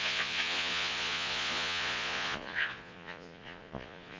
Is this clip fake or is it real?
fake